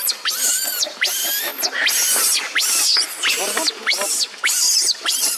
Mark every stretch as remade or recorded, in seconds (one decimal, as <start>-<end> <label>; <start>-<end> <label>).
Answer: 0.0-1.5 remade; 1.5-4.3 recorded; 4.3-5.4 remade